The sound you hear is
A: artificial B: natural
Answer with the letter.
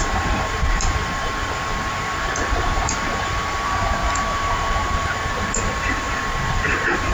A